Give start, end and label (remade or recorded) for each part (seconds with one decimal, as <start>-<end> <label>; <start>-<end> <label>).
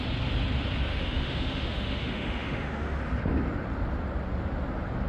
0.0-0.9 recorded; 0.9-3.0 remade; 3.0-5.1 recorded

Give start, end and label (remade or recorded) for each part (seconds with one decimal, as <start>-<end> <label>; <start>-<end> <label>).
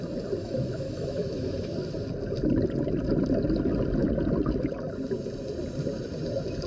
0.0-0.4 recorded; 0.4-1.7 remade; 1.7-6.7 recorded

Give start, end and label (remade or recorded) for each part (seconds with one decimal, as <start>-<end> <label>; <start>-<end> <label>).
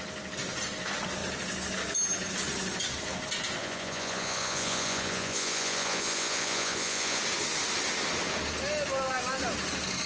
0.0-3.6 recorded; 3.6-7.2 remade; 7.2-10.1 recorded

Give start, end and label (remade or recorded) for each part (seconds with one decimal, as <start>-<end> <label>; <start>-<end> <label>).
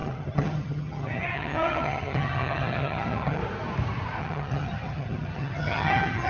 0.0-3.4 remade; 3.4-4.2 recorded; 4.2-6.3 remade